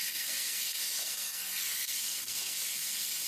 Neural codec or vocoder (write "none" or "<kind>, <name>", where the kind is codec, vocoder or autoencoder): codec, SNAC